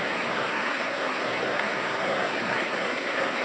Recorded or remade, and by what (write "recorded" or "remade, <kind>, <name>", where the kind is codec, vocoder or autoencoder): remade, codec, SNAC